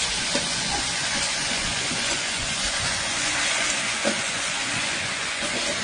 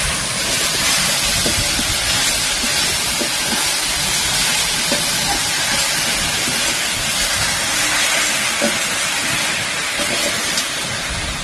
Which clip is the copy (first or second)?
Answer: first